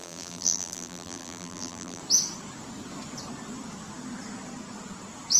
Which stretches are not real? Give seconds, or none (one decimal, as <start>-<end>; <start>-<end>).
0.0-2.0